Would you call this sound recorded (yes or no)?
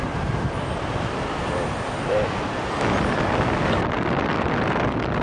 yes